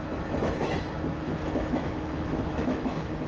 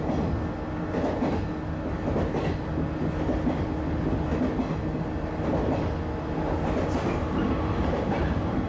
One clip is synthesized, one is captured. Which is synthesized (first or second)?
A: first